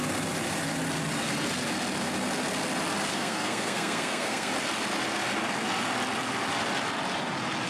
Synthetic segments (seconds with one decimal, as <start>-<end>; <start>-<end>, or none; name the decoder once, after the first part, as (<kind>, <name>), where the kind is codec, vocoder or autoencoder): 3.1-4.5 (codec, SNAC)